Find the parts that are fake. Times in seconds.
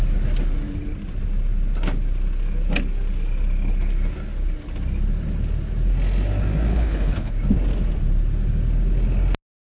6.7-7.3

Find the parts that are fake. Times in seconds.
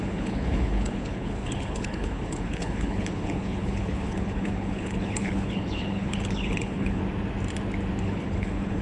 0.0-7.0; 8.0-8.8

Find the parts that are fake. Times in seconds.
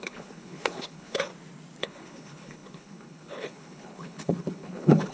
0.0-1.3; 1.8-5.1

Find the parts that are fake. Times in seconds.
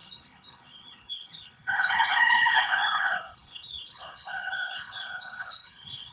0.0-6.1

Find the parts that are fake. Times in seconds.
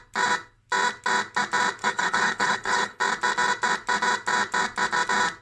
1.8-3.0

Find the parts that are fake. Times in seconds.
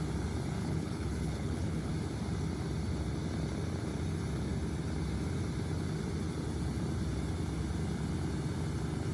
0.6-1.9